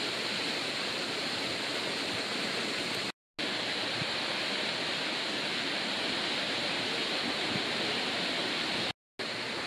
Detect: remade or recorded recorded